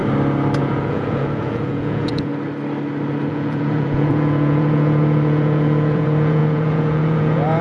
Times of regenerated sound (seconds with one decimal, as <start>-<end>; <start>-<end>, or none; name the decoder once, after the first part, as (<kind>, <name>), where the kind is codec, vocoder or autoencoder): 0.6-2.3 (vocoder, Vocos); 3.3-7.6